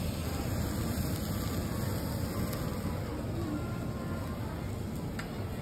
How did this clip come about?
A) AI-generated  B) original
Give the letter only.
B